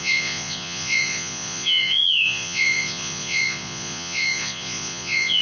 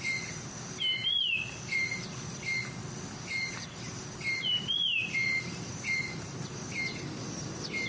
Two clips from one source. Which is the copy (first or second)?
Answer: first